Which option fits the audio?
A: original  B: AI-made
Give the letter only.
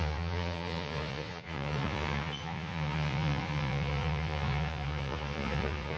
B